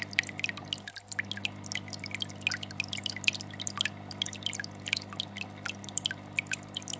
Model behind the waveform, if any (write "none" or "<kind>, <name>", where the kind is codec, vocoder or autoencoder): none